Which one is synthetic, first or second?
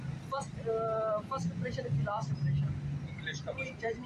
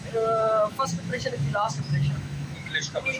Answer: second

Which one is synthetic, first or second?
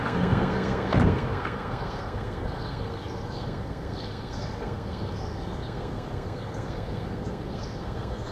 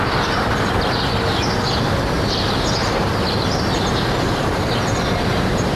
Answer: first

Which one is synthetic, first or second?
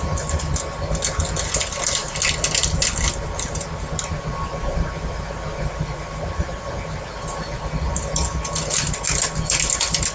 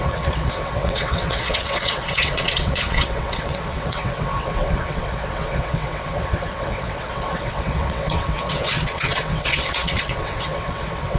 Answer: second